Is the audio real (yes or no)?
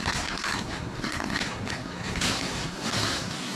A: no